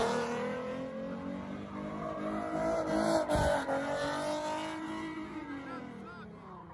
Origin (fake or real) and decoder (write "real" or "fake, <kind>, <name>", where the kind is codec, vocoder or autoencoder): real